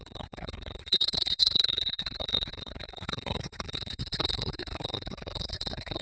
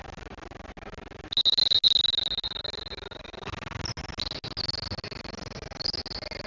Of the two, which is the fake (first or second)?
first